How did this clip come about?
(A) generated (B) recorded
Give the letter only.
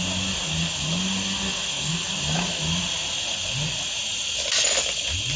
B